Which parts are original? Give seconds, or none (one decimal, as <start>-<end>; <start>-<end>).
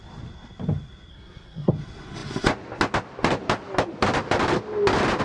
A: 0.0-1.1; 1.7-5.2